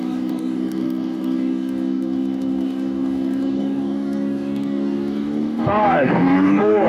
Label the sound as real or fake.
fake